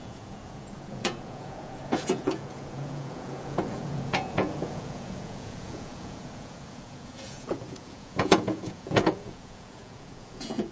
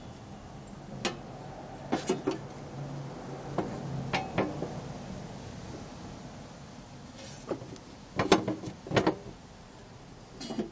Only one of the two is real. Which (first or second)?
second